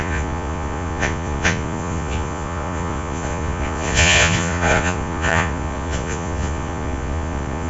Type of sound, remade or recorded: remade